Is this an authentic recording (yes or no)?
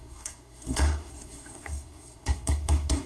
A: no